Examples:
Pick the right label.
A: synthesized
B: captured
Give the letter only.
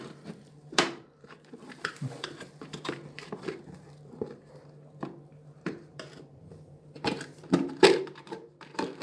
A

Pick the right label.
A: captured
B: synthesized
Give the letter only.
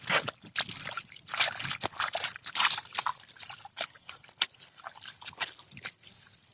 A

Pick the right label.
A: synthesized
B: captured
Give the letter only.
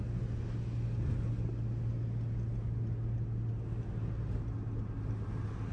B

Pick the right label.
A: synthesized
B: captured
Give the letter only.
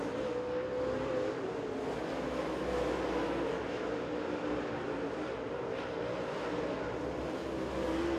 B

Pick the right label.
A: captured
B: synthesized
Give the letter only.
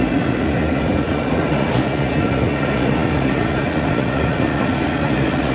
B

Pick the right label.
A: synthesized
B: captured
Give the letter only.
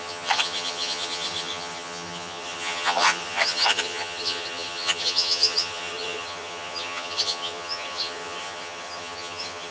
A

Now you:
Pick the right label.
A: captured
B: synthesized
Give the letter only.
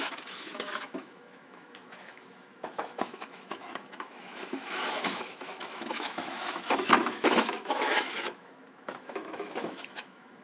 B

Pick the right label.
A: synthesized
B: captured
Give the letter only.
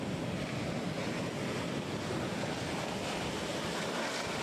B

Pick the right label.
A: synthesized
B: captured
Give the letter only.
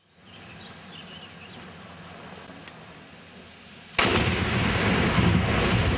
B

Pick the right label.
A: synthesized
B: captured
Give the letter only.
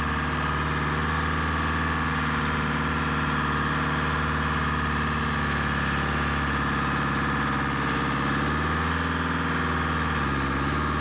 B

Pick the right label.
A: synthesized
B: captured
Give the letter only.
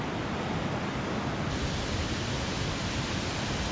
B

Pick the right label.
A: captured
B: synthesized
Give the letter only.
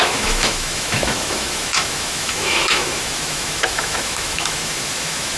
B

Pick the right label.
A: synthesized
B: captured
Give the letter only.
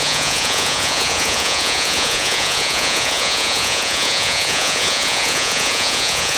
A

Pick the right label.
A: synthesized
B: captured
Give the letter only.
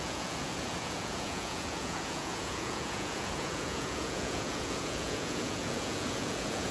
A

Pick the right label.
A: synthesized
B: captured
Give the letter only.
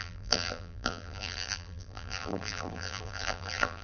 A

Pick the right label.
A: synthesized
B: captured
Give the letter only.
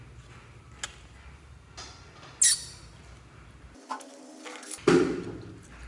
B